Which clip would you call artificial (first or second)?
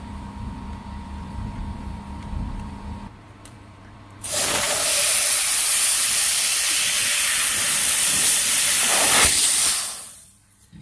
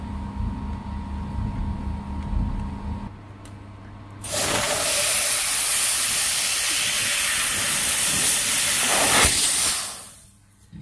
first